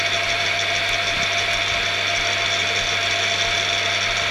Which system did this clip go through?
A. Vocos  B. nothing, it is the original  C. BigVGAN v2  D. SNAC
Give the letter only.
B